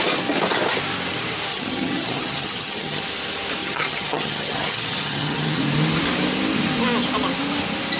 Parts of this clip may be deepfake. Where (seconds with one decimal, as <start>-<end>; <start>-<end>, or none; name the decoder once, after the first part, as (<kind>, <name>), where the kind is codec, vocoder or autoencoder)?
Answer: 1.5-3.0 (vocoder, HiFi-GAN); 3.6-5.6